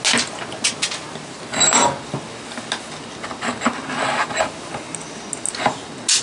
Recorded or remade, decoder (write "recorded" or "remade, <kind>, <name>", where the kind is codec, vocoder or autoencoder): recorded